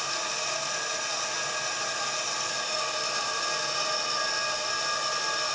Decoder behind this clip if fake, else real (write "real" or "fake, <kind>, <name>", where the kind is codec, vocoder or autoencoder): real